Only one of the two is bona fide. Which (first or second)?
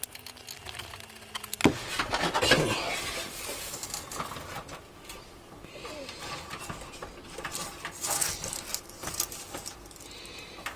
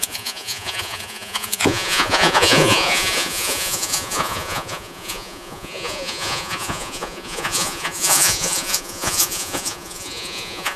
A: first